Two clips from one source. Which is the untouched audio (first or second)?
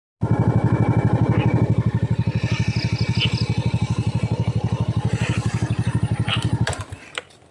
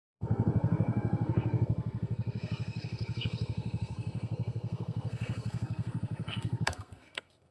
first